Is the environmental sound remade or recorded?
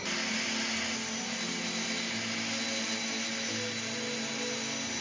recorded